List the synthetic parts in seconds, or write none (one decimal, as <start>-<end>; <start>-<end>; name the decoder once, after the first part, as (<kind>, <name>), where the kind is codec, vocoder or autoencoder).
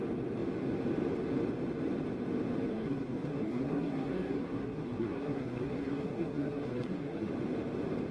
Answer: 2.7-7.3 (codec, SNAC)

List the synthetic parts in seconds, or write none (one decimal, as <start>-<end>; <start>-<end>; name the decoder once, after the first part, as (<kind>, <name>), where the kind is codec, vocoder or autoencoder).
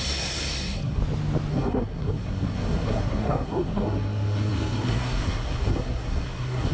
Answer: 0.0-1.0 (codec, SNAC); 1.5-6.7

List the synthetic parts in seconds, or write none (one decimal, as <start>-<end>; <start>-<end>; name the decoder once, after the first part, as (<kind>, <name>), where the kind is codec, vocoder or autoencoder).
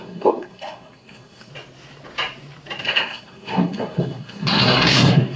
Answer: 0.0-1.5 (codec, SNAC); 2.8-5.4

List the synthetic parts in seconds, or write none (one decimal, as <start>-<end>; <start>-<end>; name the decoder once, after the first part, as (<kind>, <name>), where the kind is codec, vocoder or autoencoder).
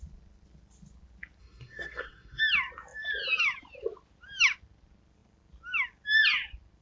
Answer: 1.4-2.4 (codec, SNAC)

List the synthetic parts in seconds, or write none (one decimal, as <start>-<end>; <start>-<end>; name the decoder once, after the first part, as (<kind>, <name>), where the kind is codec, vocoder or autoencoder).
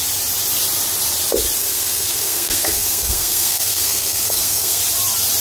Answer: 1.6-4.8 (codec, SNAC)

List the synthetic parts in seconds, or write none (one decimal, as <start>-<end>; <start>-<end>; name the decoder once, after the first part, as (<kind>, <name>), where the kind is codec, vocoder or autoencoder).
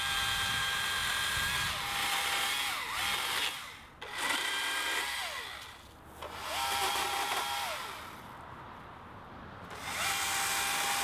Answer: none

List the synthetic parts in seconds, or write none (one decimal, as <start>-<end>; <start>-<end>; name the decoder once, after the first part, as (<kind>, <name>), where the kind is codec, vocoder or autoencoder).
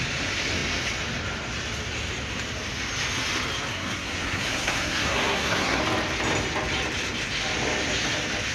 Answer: 3.7-5.8 (codec, SNAC)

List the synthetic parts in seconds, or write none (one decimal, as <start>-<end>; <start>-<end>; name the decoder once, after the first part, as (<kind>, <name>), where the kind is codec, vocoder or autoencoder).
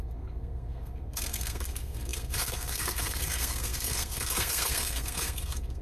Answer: 0.0-5.8 (codec, SNAC)